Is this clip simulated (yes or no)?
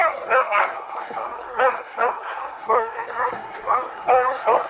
yes